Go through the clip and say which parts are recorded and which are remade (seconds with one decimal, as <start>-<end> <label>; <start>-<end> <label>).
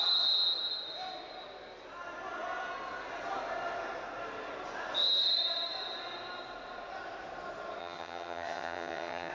0.0-7.8 recorded; 7.8-9.3 remade